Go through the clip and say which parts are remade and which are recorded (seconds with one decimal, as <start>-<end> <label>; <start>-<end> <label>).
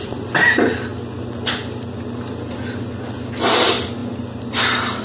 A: 0.0-5.0 recorded